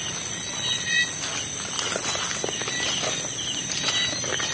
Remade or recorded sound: recorded